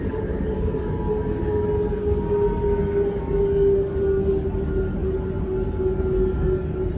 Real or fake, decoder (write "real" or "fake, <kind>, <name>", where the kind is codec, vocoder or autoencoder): fake, codec, DAC